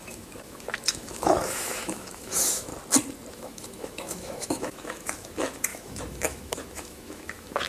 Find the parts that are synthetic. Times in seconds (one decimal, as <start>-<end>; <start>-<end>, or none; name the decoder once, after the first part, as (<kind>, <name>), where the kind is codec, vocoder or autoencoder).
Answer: 0.0-2.7 (autoencoder, DAC-VAE); 3.3-7.7